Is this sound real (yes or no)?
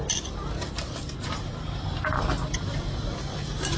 yes